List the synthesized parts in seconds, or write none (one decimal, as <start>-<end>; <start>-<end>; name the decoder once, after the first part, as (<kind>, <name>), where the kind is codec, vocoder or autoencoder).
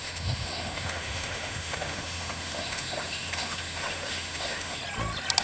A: 0.0-4.8 (autoencoder, DAC-VAE)